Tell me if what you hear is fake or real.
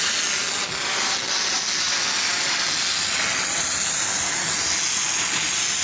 real